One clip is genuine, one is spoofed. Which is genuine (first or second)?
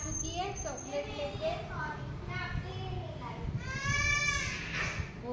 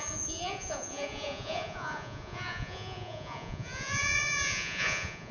first